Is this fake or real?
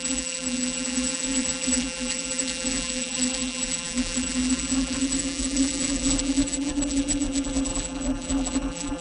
fake